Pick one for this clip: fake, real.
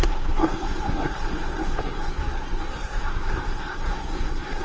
fake